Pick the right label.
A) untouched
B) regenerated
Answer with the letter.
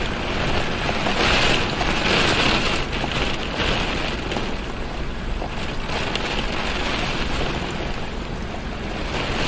A